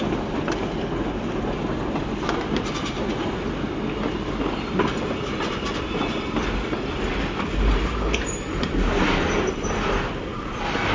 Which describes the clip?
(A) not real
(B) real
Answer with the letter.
B